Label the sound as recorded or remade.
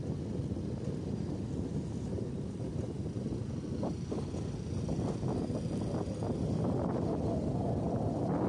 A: recorded